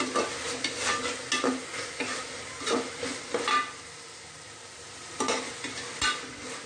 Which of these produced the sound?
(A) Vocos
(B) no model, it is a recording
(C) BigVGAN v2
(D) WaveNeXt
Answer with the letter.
B